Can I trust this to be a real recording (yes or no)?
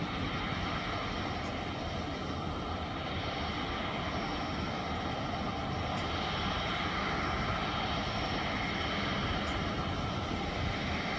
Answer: yes